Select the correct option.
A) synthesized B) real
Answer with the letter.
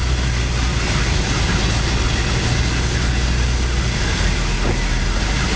B